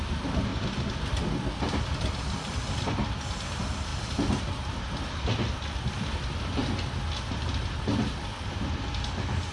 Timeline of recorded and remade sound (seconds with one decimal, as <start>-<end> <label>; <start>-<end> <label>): 0.0-0.5 recorded; 0.5-2.7 remade; 2.7-9.5 recorded